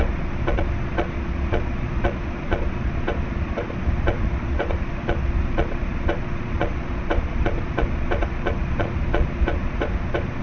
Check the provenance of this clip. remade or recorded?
remade